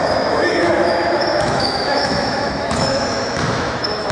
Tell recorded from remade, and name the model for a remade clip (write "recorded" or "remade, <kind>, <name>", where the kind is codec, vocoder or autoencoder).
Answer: remade, autoencoder, DAC-VAE